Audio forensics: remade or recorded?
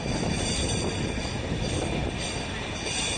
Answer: recorded